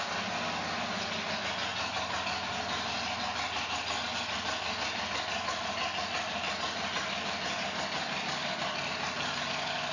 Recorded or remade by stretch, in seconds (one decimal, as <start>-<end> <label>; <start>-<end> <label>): 0.0-9.9 recorded